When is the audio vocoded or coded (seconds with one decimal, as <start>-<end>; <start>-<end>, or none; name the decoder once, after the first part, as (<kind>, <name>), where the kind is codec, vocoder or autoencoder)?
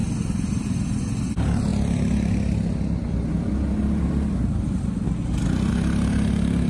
none